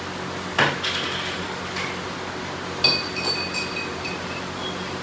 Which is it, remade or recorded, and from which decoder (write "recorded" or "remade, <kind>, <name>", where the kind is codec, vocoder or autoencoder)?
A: recorded